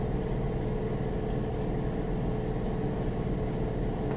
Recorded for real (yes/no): yes